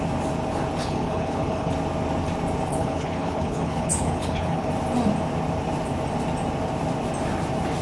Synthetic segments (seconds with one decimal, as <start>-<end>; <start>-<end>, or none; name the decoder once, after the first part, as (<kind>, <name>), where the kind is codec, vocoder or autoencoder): 0.8-1.7 (codec, HILCodec); 2.7-4.7